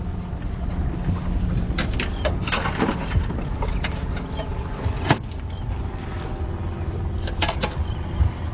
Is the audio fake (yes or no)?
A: no